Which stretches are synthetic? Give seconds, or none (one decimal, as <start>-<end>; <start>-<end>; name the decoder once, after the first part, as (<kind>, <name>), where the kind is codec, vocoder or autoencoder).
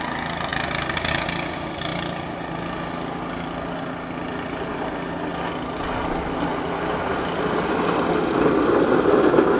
none